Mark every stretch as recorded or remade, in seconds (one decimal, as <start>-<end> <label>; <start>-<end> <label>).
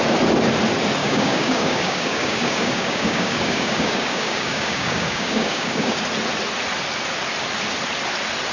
0.0-1.0 recorded; 1.0-6.0 remade; 6.0-8.5 recorded